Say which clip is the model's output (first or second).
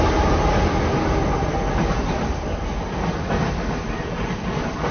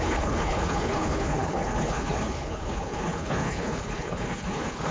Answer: second